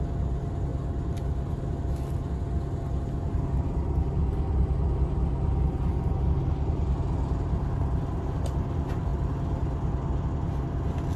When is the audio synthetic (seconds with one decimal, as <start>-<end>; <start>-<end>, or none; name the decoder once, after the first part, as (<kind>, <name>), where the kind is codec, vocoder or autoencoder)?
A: none